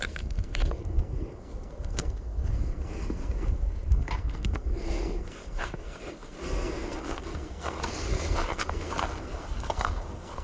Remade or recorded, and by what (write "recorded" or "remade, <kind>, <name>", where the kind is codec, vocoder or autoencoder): remade, codec, SNAC